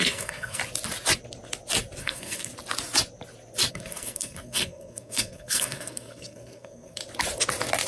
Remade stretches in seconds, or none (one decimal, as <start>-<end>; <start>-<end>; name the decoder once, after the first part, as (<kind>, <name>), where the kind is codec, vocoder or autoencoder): 0.0-0.6 (codec, SNAC); 2.0-2.5; 3.7-7.0